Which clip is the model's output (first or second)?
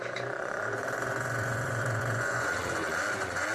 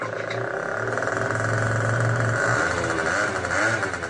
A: first